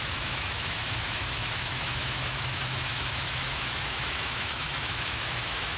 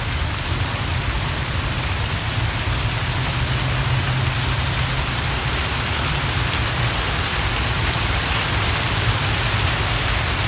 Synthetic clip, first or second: first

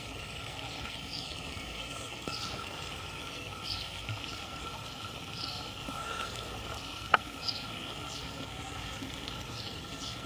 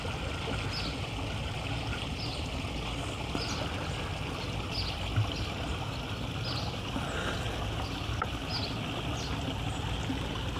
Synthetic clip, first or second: first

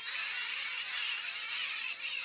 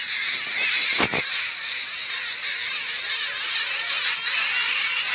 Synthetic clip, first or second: first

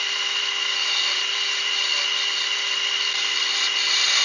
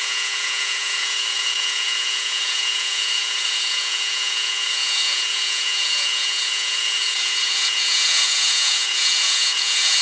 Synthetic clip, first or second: second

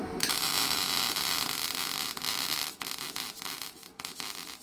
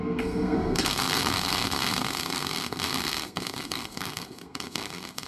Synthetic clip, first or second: second